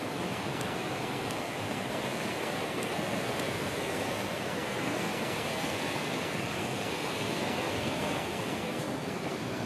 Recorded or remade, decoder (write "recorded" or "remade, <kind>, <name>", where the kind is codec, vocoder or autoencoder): remade, codec, SNAC